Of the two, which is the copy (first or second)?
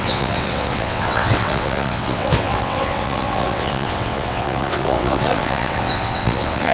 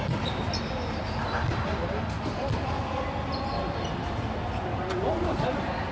first